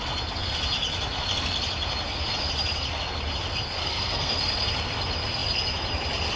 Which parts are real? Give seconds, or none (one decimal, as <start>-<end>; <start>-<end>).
0.0-3.8; 4.4-6.4